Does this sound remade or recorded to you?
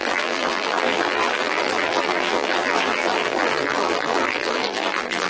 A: remade